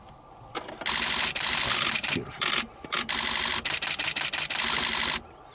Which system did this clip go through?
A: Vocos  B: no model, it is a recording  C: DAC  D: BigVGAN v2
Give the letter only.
B